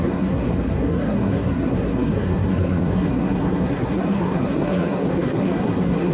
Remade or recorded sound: remade